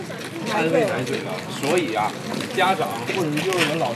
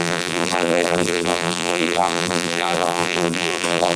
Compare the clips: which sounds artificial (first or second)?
second